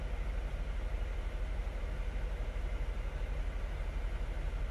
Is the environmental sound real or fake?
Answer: real